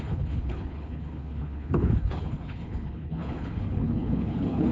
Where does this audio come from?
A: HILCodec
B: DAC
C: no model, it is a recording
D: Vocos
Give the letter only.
A